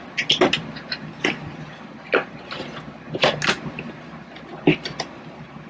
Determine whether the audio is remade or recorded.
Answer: recorded